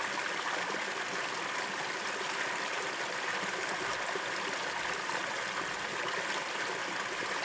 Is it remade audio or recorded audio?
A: recorded